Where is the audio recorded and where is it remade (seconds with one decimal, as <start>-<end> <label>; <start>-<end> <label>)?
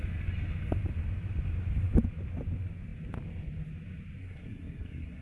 0.0-4.2 recorded; 4.2-5.2 remade